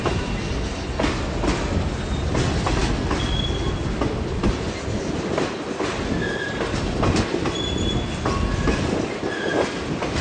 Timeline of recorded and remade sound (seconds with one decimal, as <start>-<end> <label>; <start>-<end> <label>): 0.0-10.2 recorded